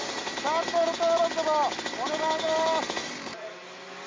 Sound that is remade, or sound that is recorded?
recorded